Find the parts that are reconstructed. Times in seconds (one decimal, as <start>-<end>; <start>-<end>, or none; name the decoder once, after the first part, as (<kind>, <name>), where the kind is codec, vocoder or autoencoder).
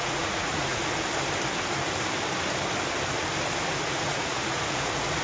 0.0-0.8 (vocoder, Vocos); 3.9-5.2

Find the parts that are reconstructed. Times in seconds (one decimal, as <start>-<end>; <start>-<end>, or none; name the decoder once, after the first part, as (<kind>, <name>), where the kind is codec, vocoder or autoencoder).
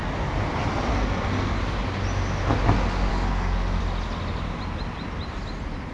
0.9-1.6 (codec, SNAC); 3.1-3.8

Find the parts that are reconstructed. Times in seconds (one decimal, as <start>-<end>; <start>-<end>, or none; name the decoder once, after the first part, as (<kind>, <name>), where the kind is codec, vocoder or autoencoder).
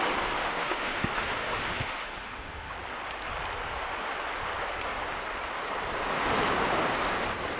0.4-2.7 (autoencoder, DAC-VAE)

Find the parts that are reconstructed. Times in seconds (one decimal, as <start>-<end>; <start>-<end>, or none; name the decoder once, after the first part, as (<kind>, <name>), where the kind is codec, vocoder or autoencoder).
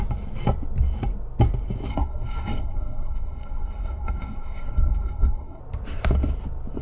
1.9-5.6 (codec, SNAC)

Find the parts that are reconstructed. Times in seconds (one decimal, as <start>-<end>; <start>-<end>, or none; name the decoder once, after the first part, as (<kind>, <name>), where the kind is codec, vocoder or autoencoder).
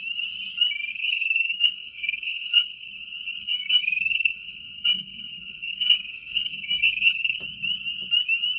0.9-2.9 (codec, SNAC); 3.4-7.4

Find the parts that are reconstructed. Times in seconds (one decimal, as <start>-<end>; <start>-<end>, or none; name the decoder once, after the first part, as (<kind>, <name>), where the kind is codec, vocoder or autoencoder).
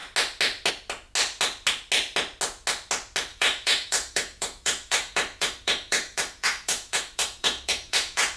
3.3-8.4 (autoencoder, DAC-VAE)